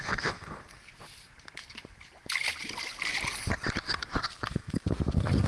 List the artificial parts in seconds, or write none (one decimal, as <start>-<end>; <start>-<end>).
0.0-0.9; 4.2-5.5